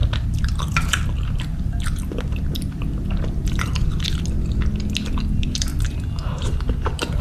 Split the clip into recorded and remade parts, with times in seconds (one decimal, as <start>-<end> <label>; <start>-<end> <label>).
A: 0.0-7.2 recorded